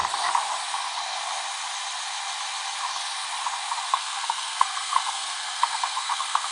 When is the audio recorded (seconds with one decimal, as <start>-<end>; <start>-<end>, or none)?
0.0-3.9